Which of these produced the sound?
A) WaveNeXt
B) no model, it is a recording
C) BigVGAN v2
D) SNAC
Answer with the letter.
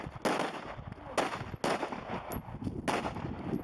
B